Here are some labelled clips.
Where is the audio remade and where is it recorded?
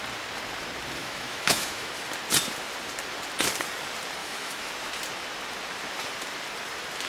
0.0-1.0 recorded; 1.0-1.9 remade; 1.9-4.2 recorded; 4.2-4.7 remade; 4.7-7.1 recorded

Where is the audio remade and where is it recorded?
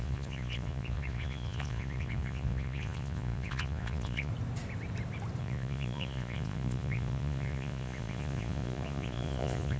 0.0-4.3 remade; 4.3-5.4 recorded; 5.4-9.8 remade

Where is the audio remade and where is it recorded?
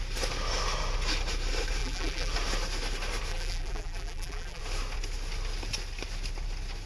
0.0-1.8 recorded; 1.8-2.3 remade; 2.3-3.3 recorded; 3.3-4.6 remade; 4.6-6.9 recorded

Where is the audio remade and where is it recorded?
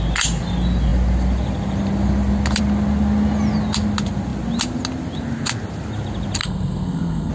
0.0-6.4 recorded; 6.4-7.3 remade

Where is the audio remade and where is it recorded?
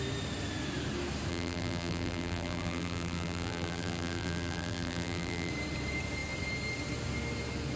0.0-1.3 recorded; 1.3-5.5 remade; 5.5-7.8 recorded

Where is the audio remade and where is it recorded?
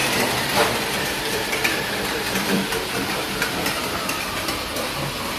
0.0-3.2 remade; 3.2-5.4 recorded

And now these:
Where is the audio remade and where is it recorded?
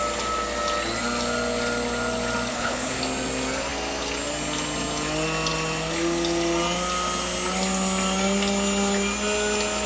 0.0-2.5 recorded; 2.5-3.0 remade; 3.0-9.9 recorded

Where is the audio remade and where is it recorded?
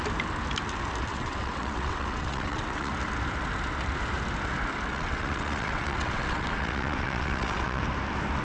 0.0-1.1 recorded; 1.1-2.9 remade; 2.9-4.9 recorded; 4.9-7.8 remade; 7.8-8.4 recorded